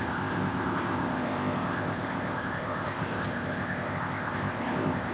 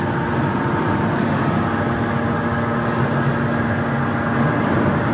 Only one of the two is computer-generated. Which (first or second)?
first